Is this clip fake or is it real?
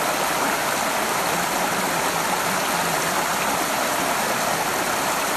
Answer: real